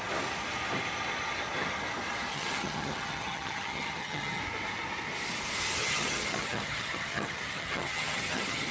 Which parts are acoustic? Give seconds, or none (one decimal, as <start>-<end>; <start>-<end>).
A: 0.0-2.3; 4.4-5.8